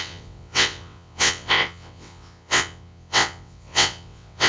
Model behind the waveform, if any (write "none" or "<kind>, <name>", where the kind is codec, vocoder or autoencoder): vocoder, WaveNeXt